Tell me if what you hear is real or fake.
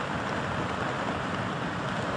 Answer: real